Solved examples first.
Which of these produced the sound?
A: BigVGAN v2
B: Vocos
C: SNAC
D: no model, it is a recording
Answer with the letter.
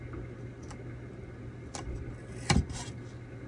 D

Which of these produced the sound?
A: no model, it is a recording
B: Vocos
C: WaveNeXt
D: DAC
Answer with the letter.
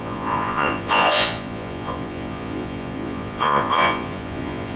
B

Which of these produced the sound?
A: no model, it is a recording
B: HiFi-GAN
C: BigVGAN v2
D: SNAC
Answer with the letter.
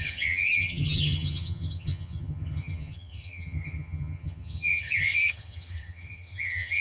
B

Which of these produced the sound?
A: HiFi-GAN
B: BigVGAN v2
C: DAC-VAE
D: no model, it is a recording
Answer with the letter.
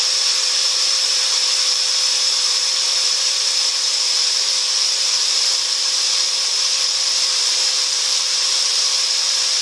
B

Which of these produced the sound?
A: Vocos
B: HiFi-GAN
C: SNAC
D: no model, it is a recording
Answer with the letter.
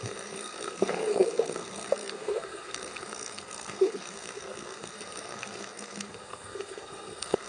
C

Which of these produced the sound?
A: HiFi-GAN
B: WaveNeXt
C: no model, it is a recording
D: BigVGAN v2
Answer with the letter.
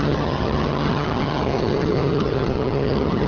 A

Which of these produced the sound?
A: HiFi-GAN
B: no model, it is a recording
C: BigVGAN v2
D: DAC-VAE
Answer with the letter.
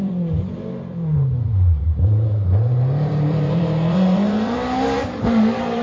C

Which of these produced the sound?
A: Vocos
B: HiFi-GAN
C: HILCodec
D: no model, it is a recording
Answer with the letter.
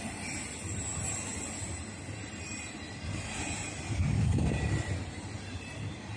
D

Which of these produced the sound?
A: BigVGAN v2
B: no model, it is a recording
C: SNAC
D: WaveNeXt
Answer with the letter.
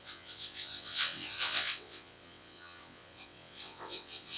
D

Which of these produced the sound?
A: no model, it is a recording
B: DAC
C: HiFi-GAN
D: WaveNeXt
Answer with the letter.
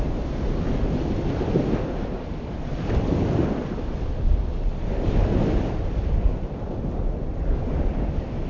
A